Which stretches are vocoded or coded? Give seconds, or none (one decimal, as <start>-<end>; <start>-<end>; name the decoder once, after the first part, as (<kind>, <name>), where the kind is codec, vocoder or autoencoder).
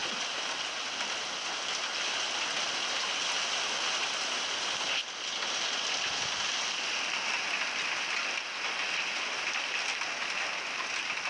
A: none